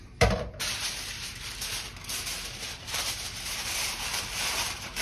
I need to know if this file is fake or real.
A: fake